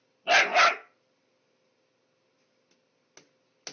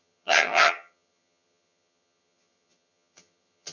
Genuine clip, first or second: first